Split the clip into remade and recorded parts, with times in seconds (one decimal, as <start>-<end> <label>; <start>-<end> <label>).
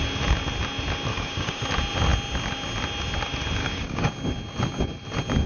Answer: 0.0-1.1 recorded; 1.1-1.6 remade; 1.6-3.6 recorded; 3.6-4.1 remade; 4.1-5.5 recorded